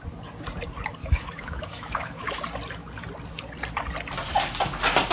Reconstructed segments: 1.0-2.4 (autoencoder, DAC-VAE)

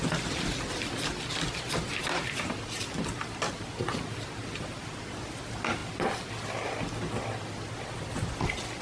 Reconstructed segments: none

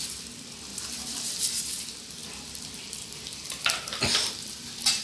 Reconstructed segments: none

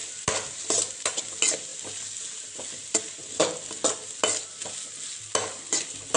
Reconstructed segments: none

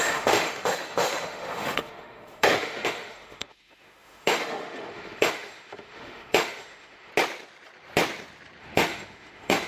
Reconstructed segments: 0.0-7.1 (autoencoder, DAC-VAE); 8.6-9.7

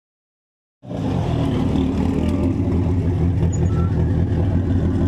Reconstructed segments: none

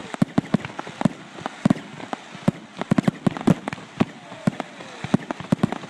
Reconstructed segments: none